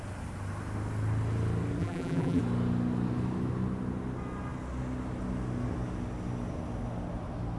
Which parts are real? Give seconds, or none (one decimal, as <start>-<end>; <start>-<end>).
0.0-1.8; 2.4-7.6